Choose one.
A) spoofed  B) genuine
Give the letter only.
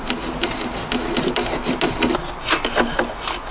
B